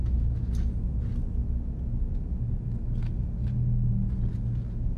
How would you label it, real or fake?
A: real